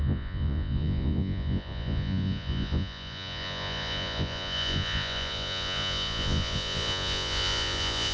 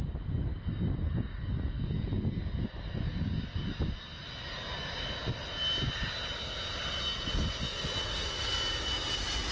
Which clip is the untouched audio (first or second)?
second